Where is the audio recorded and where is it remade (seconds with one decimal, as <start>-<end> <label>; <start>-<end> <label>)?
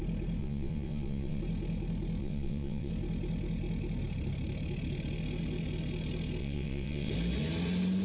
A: 0.0-0.4 recorded; 0.4-1.4 remade; 1.4-2.2 recorded; 2.2-2.9 remade; 2.9-6.4 recorded; 6.4-7.1 remade; 7.1-8.0 recorded